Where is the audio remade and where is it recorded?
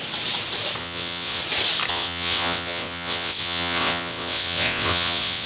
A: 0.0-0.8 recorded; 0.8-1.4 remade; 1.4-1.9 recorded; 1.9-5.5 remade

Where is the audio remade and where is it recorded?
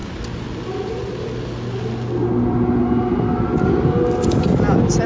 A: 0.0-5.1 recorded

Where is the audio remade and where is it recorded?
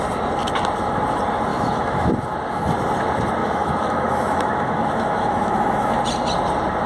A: 0.0-1.5 recorded; 1.5-2.1 remade; 2.1-3.4 recorded; 3.4-6.0 remade; 6.0-6.9 recorded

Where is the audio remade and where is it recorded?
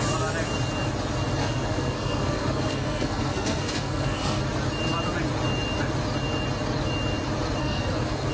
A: 0.0-1.4 recorded; 1.4-4.4 remade; 4.4-7.6 recorded; 7.6-8.3 remade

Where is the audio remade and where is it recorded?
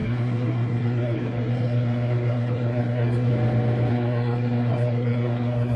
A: 0.0-3.3 remade; 3.3-3.9 recorded; 3.9-5.8 remade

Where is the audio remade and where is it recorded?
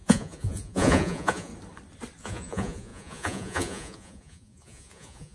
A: 0.0-1.5 remade; 1.5-2.2 recorded; 2.2-5.3 remade